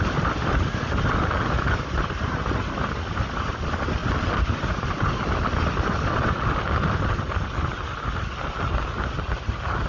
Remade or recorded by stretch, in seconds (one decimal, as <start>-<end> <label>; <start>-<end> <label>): 0.0-9.9 recorded